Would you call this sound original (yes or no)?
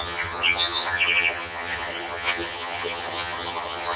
no